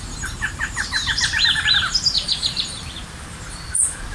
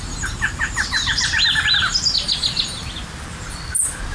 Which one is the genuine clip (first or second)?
second